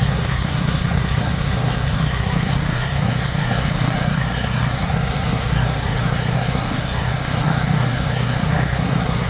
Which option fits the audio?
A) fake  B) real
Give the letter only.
A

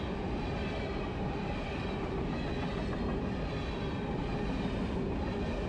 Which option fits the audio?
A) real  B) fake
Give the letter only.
A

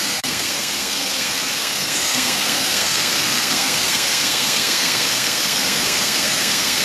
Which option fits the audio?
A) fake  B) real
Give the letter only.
A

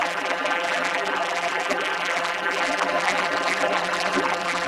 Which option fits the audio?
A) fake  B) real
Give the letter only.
A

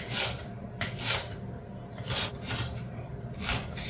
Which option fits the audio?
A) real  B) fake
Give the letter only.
A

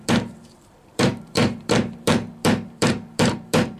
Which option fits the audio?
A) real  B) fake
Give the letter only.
B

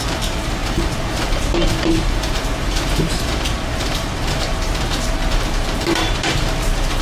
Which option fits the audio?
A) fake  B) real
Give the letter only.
A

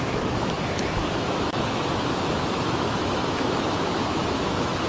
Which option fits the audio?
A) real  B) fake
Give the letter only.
B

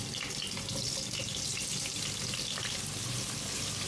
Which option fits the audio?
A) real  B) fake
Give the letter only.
A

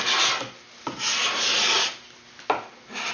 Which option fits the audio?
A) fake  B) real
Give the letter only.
B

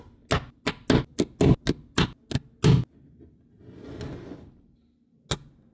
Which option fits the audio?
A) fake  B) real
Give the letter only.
B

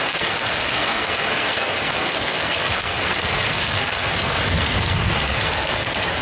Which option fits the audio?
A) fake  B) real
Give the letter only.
A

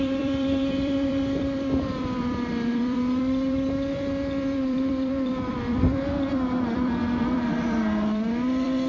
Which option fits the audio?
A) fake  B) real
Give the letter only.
A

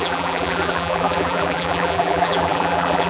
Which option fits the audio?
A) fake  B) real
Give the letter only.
A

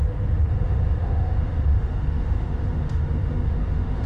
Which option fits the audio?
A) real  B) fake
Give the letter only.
B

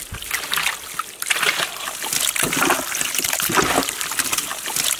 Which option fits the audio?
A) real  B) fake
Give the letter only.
A